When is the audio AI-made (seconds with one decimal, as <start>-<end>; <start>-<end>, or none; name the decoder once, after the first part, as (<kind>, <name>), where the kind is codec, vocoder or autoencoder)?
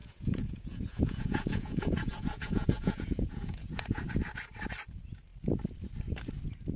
0.0-4.1 (vocoder, Vocos)